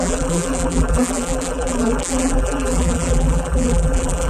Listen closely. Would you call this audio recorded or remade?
remade